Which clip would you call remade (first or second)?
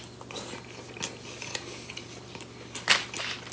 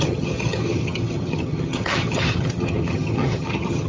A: second